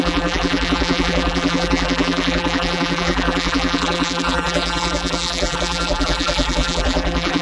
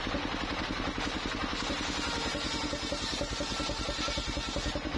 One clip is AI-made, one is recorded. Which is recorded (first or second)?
second